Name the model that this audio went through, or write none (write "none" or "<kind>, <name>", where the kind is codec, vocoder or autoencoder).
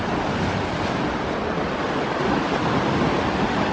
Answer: none